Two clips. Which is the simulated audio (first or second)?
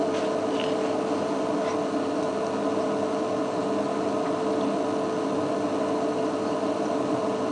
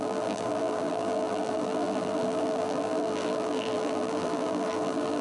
second